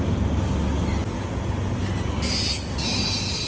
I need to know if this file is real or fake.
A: real